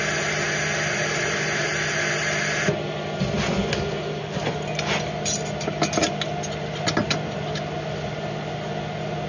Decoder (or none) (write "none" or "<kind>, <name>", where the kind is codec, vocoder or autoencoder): none